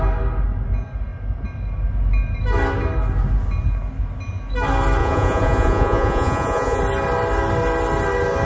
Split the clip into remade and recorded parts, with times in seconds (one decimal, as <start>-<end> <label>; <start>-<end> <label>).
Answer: 0.0-5.0 recorded; 5.0-6.8 remade; 6.8-8.4 recorded